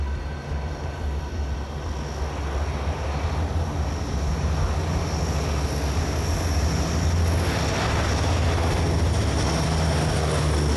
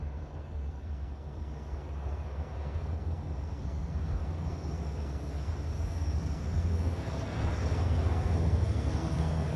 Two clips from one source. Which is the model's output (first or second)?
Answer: second